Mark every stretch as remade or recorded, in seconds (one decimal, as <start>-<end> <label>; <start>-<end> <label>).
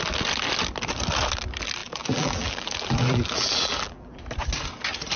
0.0-1.8 recorded; 1.8-4.2 remade; 4.2-5.2 recorded